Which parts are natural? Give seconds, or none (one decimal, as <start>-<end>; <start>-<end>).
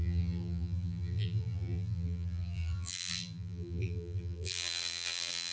none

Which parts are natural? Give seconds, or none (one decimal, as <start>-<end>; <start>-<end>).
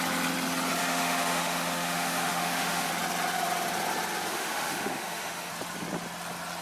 0.0-0.8; 2.9-4.3; 5.5-6.6